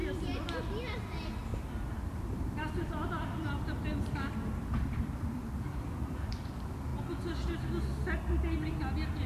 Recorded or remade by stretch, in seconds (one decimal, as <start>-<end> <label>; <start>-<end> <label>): 0.0-1.5 recorded; 1.5-6.5 remade; 6.5-9.3 recorded